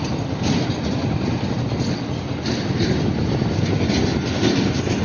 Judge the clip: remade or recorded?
recorded